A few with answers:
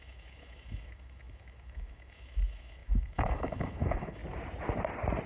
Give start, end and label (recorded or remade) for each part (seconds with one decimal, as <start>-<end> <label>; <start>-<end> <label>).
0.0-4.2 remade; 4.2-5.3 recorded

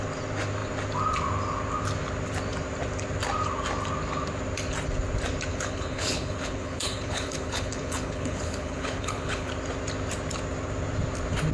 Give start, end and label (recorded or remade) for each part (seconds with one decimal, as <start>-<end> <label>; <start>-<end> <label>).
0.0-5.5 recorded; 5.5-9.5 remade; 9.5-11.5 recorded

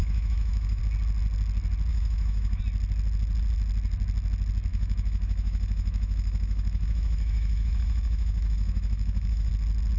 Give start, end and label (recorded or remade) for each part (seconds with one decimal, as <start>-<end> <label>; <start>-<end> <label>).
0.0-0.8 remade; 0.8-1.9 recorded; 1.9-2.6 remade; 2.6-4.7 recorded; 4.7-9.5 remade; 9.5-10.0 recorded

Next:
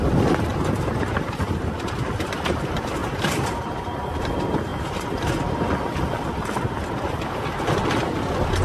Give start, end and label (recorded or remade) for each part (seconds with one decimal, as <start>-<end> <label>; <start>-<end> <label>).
0.0-0.5 recorded; 0.5-2.3 remade; 2.3-3.0 recorded; 3.0-4.2 remade; 4.2-8.6 recorded

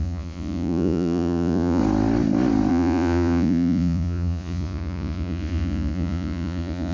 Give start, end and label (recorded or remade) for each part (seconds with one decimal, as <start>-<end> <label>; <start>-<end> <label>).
0.0-1.8 remade; 1.8-2.7 recorded; 2.7-6.9 remade

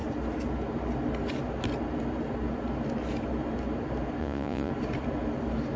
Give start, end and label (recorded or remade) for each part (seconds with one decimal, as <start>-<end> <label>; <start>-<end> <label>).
0.0-4.2 recorded; 4.2-4.7 remade; 4.7-5.8 recorded

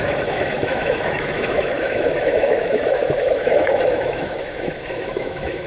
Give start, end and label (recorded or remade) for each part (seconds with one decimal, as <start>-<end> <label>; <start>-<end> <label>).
0.0-5.7 remade

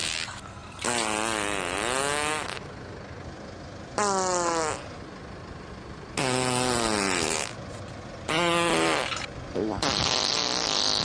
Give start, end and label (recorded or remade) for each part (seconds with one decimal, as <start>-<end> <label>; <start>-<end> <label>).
0.0-11.0 recorded